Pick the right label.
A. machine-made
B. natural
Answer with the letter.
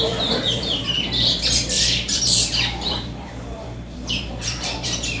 A